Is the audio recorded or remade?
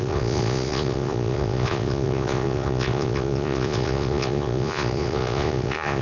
remade